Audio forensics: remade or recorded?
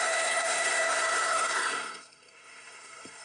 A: remade